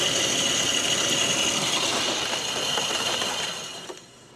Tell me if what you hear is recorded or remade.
recorded